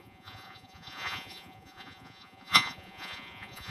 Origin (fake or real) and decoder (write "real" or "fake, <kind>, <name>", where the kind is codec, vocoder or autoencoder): fake, vocoder, Vocos